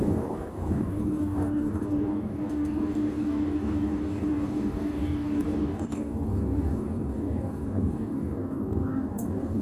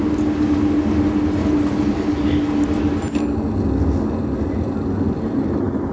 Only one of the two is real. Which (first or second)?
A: second